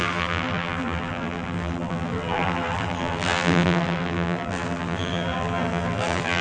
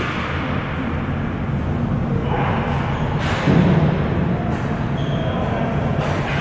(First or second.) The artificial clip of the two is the first